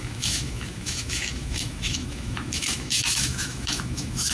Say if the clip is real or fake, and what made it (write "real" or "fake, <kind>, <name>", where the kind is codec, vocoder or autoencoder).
fake, autoencoder, DAC-VAE